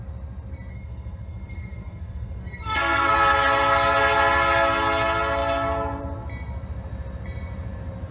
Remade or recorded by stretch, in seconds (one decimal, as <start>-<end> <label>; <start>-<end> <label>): 0.0-0.7 recorded; 0.7-3.1 remade; 3.1-8.1 recorded